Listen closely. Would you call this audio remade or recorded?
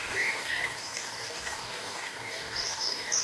remade